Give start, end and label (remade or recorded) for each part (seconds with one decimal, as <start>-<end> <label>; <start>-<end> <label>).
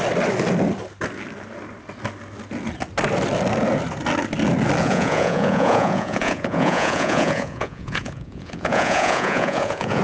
0.0-4.8 recorded; 4.8-10.0 remade